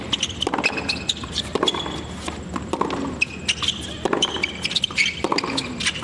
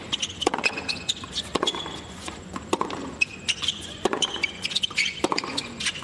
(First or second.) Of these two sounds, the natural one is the first